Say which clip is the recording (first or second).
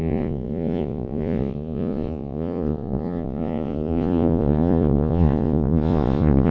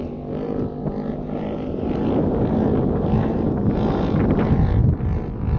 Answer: second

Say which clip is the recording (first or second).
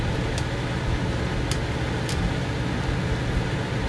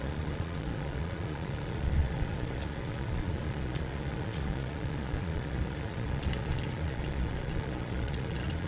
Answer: first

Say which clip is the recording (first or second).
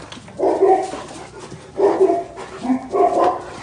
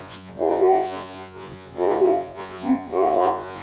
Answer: first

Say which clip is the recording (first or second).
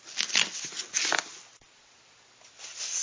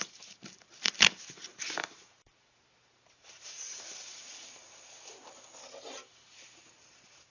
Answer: first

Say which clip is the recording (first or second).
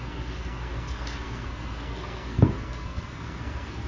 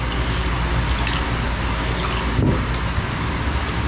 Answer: second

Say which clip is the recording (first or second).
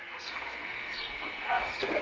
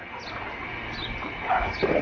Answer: second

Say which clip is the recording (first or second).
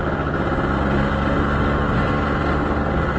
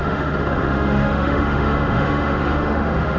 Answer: first